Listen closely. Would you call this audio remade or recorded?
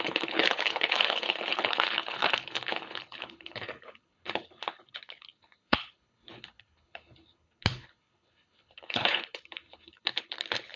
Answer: remade